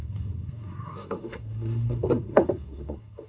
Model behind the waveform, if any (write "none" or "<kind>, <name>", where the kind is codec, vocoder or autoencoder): codec, SNAC